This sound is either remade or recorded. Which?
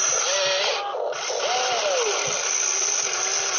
recorded